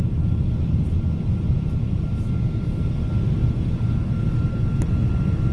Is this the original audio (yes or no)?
yes